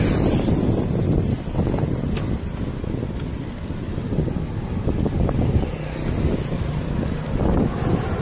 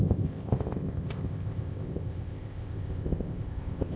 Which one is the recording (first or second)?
first